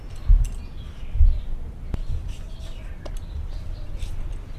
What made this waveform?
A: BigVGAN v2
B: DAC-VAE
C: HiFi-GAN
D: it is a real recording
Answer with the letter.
A